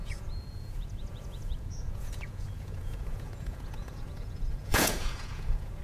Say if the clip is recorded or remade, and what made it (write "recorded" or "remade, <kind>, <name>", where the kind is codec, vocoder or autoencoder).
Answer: remade, vocoder, Vocos